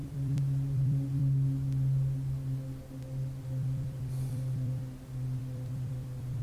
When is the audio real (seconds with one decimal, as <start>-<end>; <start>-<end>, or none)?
1.2-3.4